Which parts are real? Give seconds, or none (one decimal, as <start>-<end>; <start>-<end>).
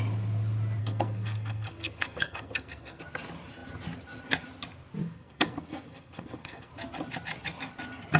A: 0.0-0.8; 3.0-5.0; 6.7-8.2